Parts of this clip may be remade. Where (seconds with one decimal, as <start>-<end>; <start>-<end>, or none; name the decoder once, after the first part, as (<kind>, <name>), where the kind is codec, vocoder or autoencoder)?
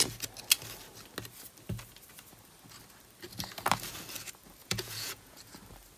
4.6-5.6 (vocoder, Vocos)